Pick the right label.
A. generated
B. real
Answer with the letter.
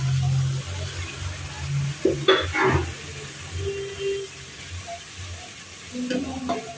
B